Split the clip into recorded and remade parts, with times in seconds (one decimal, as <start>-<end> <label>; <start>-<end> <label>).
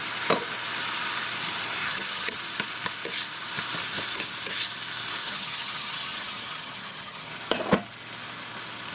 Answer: 0.0-1.8 recorded; 1.8-2.4 remade; 2.4-5.2 recorded; 5.2-7.3 remade; 7.3-8.9 recorded